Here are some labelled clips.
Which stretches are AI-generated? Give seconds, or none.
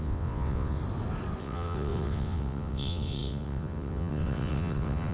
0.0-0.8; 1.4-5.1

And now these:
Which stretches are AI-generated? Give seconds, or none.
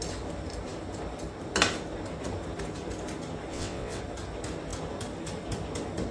3.5-4.0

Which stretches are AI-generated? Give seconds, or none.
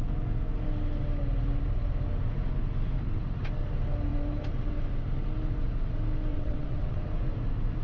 6.3-7.0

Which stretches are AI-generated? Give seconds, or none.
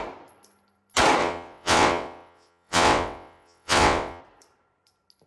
1.2-4.2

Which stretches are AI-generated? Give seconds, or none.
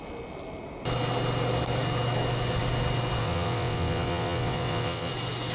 3.2-5.1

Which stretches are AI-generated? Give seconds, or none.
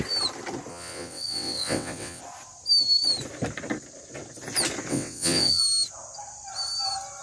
0.7-2.2; 4.9-5.6